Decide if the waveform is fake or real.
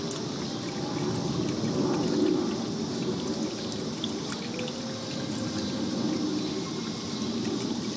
real